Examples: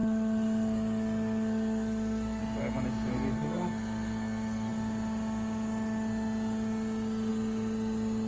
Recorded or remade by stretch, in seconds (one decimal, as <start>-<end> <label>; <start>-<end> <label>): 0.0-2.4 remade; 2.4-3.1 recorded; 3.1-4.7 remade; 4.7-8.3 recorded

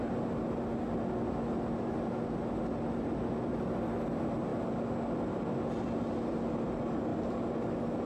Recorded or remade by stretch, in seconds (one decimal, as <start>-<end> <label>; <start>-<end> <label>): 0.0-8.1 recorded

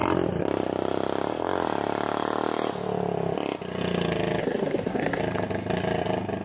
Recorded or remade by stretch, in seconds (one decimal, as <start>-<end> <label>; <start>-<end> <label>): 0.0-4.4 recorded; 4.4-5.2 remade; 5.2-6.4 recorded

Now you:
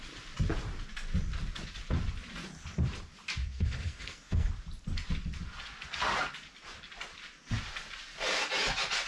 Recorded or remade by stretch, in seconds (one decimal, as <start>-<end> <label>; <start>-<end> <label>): 0.0-3.4 recorded; 3.4-4.5 remade; 4.5-9.1 recorded